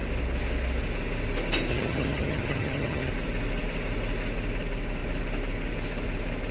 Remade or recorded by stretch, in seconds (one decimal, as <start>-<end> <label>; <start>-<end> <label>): 0.0-1.7 recorded; 1.7-3.1 remade; 3.1-6.5 recorded